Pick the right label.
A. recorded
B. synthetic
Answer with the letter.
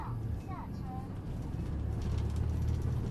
A